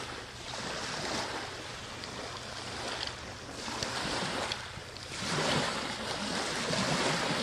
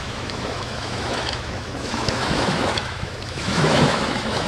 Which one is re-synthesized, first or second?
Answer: second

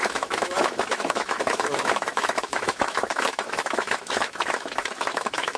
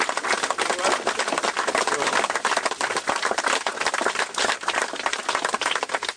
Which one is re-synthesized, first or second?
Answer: first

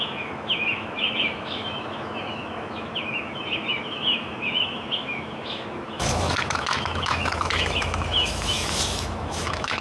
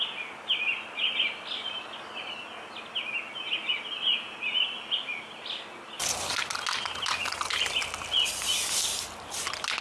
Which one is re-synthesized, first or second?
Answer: first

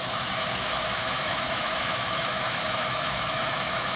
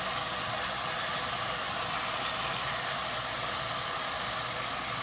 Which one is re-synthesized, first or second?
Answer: first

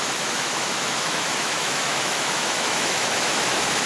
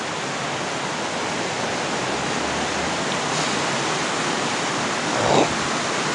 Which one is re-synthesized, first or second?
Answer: first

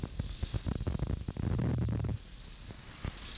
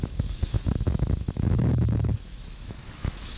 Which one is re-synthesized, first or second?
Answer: second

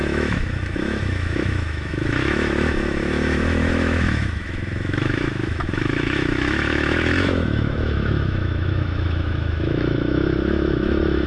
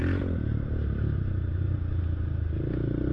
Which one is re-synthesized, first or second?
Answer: first